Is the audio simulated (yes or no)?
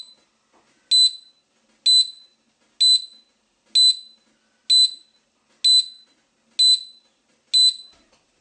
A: no